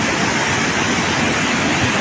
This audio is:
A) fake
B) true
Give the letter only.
B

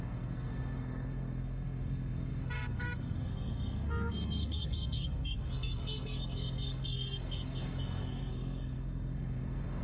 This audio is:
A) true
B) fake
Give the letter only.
B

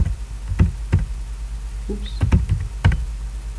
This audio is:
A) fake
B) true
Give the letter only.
B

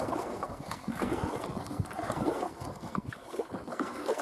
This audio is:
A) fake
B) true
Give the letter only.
A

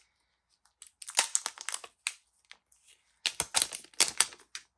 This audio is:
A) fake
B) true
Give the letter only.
B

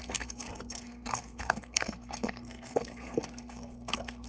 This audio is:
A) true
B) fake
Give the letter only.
B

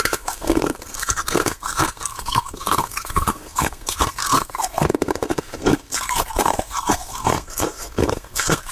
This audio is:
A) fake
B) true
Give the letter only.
A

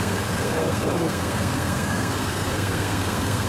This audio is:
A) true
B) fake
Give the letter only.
B